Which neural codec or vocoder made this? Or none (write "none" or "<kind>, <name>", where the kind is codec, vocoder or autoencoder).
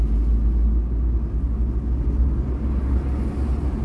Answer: none